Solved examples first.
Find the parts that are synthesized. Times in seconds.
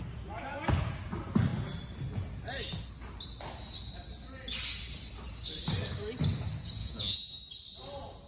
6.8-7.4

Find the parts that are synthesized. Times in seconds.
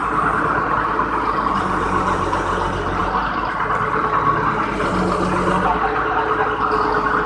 none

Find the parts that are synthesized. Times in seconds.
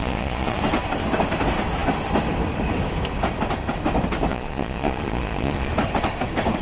0.0-0.6; 4.3-5.7